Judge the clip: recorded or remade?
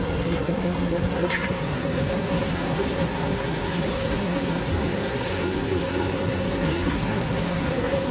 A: remade